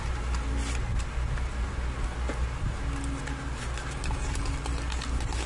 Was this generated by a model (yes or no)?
no